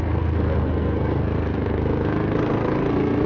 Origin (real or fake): fake